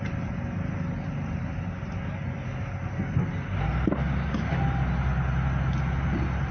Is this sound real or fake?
real